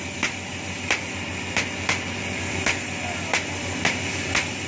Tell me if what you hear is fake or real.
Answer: real